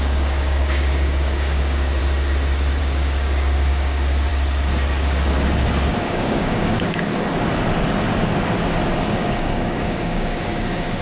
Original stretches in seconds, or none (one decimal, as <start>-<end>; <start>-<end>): 2.0-2.8; 4.3-6.0; 7.1-8.9